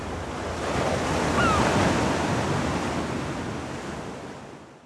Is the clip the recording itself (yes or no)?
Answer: yes